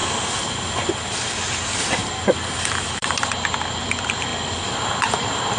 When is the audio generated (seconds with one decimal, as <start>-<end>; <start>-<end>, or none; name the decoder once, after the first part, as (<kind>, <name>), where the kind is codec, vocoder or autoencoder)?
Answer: none